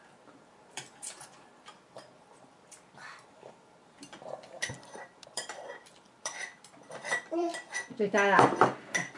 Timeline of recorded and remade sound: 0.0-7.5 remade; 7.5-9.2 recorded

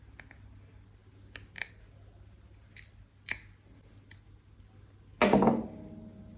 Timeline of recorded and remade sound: 0.0-6.4 recorded

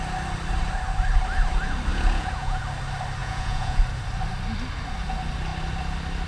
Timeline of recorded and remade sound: 0.0-1.9 recorded; 1.9-2.6 remade; 2.6-3.2 recorded; 3.2-3.8 remade; 3.8-6.3 recorded

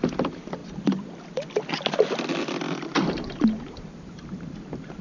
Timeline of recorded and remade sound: 0.0-3.0 recorded; 3.0-5.0 remade